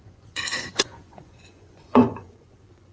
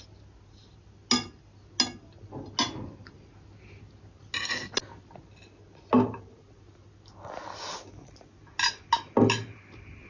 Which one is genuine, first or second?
second